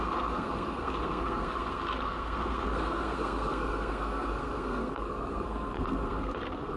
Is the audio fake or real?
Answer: fake